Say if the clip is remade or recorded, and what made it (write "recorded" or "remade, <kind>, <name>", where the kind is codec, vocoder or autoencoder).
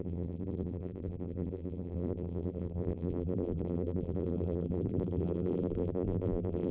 remade, vocoder, BigVGAN v2